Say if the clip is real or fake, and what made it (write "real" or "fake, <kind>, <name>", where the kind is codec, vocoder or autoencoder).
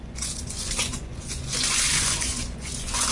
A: fake, vocoder, Vocos